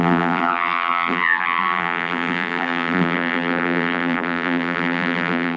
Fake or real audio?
fake